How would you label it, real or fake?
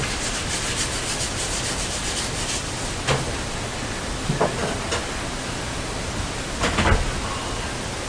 real